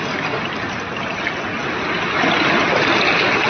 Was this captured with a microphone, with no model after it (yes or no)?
yes